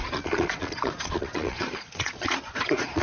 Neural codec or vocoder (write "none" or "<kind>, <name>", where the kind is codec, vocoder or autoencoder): vocoder, Vocos